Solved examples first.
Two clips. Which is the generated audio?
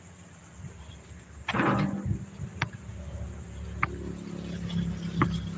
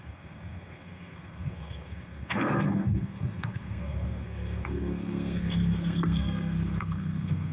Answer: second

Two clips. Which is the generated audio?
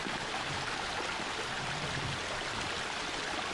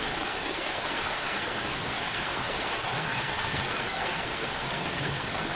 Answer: second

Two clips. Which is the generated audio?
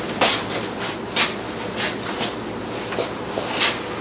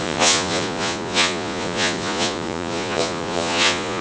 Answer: second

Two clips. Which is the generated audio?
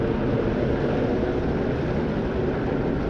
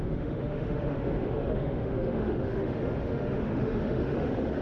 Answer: second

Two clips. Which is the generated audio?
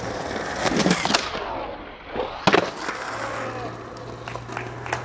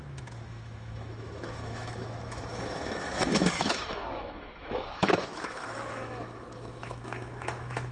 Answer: second